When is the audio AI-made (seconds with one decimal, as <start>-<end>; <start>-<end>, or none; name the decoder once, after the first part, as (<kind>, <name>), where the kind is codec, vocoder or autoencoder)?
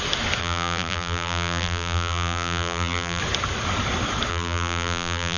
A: 0.4-3.2 (vocoder, BigVGAN v2); 4.3-5.4